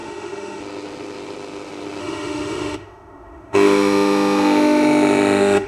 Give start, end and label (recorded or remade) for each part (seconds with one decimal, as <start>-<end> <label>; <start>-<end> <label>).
0.0-0.6 remade; 0.6-2.0 recorded; 2.0-5.7 remade